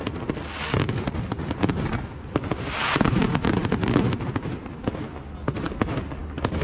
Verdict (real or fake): real